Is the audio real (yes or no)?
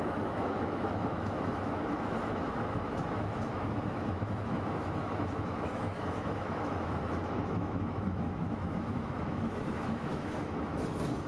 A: no